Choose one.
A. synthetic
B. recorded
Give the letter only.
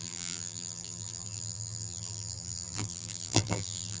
A